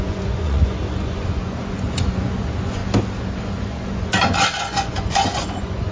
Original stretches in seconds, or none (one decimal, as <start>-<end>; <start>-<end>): 2.8-3.4

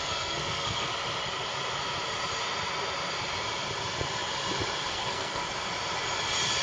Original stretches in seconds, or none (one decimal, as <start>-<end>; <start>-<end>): 0.9-4.9; 5.4-6.6

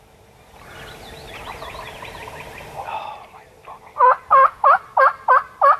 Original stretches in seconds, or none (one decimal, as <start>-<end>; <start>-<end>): 0.0-4.3; 4.8-5.8

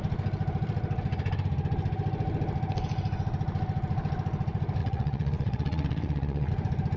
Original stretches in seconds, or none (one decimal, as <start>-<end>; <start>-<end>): 0.0-4.8; 6.5-7.0